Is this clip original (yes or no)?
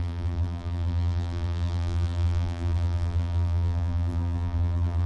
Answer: no